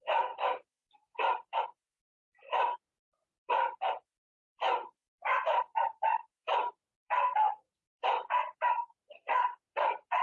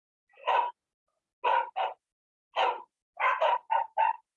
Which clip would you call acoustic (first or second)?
second